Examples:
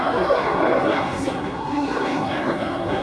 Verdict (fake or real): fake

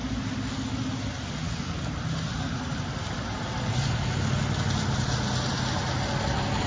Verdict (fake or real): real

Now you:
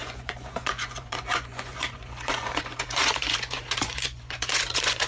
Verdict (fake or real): fake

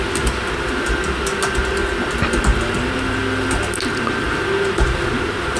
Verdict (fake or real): real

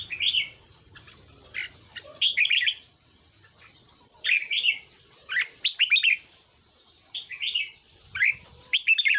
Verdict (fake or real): fake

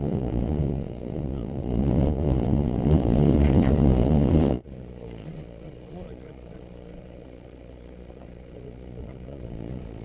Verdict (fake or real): fake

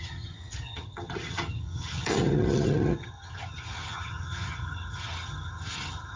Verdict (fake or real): fake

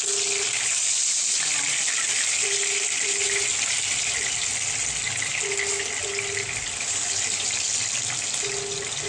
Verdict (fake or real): real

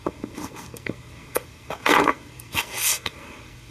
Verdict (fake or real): fake